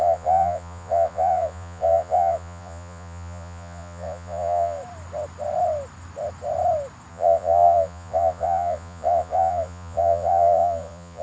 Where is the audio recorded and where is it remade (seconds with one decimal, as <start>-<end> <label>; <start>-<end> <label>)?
0.0-4.8 remade; 4.8-7.1 recorded; 7.1-11.2 remade